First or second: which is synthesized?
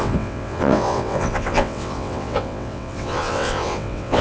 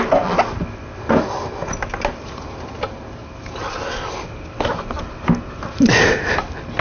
first